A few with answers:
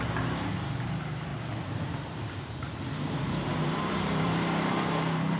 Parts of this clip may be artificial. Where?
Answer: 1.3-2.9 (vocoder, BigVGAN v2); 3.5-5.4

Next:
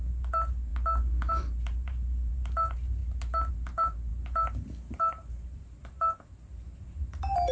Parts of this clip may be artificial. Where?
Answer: 0.0-0.7 (vocoder, BigVGAN v2); 1.3-3.0; 3.5-7.5

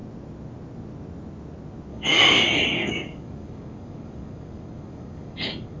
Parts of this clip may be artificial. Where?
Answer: 1.9-5.8 (codec, DAC)

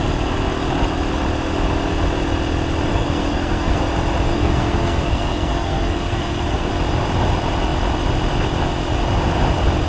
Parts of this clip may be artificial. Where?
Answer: 2.9-3.8 (codec, SNAC); 4.3-6.7

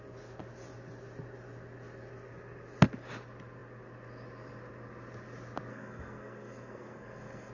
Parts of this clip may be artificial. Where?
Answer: 5.7-7.5 (codec, SNAC)

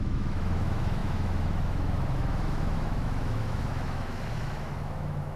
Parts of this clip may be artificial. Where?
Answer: 0.0-5.4 (autoencoder, DAC-VAE)